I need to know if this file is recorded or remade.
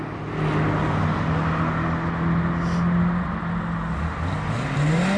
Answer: recorded